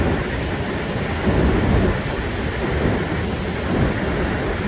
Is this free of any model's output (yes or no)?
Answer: yes